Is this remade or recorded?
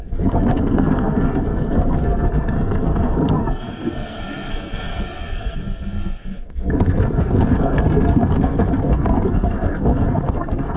remade